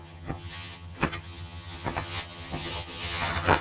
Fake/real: fake